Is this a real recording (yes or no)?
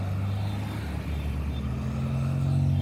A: yes